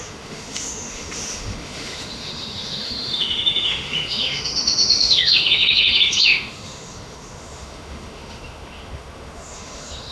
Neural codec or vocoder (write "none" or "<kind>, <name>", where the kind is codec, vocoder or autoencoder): autoencoder, DAC-VAE